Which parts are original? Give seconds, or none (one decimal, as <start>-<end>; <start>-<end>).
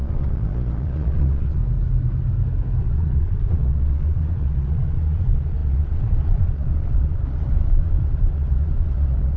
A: 1.6-2.8